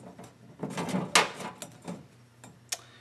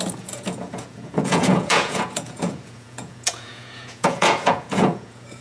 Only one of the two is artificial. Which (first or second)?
second